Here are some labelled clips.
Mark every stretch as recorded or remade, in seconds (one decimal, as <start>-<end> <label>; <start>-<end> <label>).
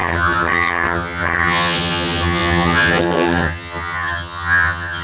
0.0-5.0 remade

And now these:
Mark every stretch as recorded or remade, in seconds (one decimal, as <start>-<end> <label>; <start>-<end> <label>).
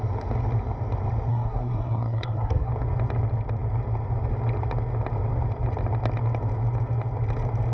0.0-1.3 recorded; 1.3-2.7 remade; 2.7-7.7 recorded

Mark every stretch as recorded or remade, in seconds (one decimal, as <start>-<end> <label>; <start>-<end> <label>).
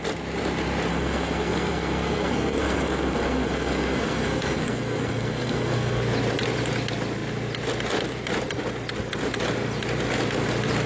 0.0-0.9 recorded; 0.9-6.0 remade; 6.0-10.9 recorded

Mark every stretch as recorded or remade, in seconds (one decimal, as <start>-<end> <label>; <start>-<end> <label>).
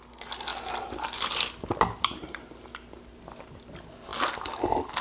0.0-5.0 recorded